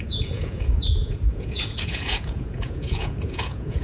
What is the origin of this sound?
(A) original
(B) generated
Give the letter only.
B